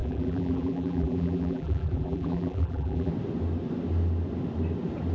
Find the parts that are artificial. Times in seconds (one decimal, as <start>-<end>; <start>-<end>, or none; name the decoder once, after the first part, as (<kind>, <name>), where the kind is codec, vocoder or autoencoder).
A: 0.0-3.1 (vocoder, BigVGAN v2)